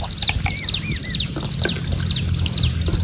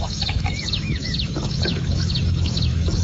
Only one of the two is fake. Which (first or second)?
second